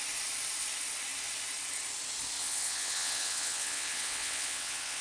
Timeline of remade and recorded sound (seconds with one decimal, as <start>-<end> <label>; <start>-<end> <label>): 0.0-2.4 recorded; 2.4-5.0 remade